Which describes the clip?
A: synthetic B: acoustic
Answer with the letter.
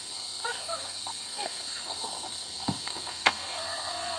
A